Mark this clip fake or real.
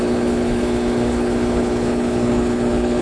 fake